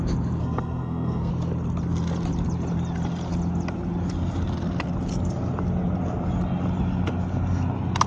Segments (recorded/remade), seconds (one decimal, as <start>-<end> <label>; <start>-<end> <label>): 0.0-0.4 recorded; 0.4-1.3 remade; 1.3-8.1 recorded